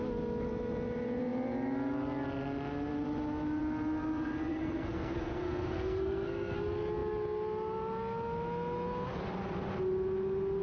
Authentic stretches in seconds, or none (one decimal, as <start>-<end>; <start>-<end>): 0.0-4.5; 6.6-10.6